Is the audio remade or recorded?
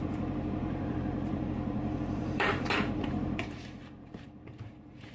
remade